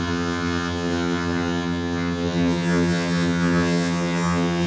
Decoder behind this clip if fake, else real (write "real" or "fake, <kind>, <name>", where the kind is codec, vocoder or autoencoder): fake, vocoder, HiFi-GAN